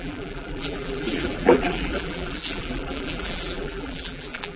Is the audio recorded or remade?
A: remade